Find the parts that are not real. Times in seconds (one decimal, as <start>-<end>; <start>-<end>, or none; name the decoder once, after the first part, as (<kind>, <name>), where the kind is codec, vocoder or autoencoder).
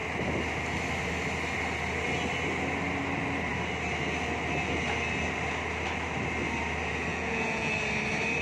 7.1-7.7 (vocoder, Vocos)